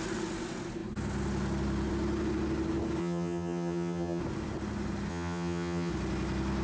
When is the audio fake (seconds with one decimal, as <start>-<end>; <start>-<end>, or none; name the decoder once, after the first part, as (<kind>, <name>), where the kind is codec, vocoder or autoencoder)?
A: 3.0-4.2 (vocoder, HiFi-GAN); 5.1-5.9